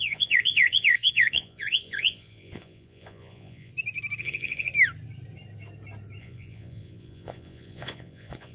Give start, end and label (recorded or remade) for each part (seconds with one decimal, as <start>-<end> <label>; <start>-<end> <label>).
0.0-3.7 remade; 3.7-4.2 recorded; 4.2-4.7 remade; 4.7-6.2 recorded; 6.2-8.5 remade